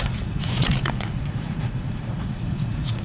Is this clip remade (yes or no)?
yes